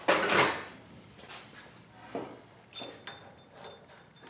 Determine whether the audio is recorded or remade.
recorded